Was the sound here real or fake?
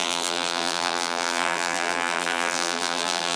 fake